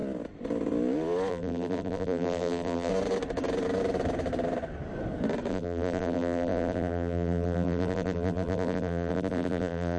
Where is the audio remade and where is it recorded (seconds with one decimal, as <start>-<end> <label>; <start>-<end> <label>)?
0.0-1.3 recorded; 1.3-2.9 remade; 2.9-5.5 recorded; 5.5-10.0 remade